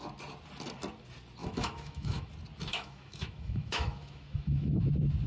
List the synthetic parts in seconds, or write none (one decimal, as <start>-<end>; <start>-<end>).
1.4-2.3; 2.7-4.8